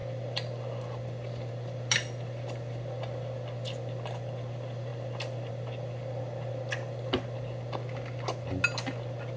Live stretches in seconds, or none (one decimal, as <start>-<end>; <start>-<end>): 0.0-9.4